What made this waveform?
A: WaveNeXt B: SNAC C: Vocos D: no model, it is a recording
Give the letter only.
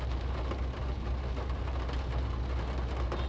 D